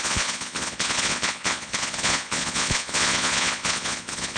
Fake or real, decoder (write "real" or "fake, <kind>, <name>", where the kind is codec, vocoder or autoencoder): fake, vocoder, Vocos